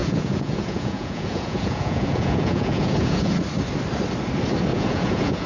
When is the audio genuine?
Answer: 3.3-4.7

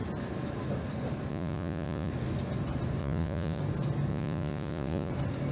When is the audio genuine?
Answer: 0.0-1.3; 2.1-3.0; 3.6-4.1; 5.1-5.5

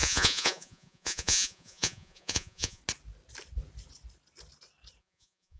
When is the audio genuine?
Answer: 2.8-5.0

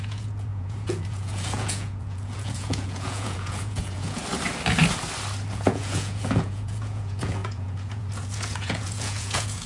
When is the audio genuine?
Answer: 4.2-5.5

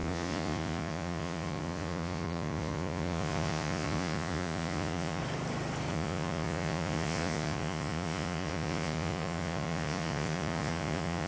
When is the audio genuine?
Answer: 5.2-5.9

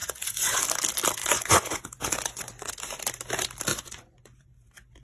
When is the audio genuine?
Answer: 0.6-1.2; 2.7-3.7; 4.5-5.0